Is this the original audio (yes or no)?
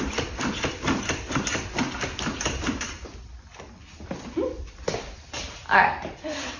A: no